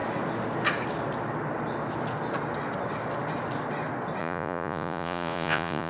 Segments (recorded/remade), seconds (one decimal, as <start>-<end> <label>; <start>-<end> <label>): 0.0-4.2 recorded; 4.2-5.9 remade